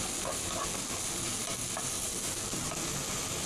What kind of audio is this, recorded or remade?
recorded